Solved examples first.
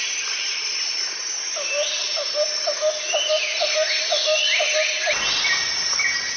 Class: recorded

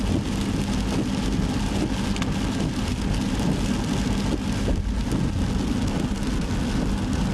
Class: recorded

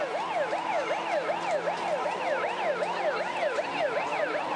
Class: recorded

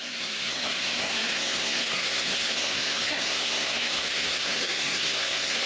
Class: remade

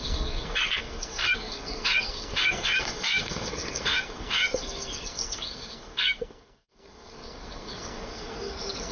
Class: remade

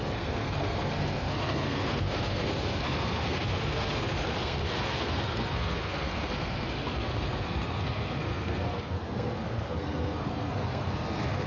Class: remade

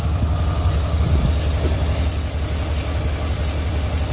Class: recorded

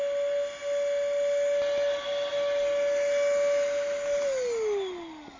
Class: recorded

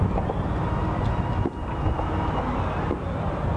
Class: recorded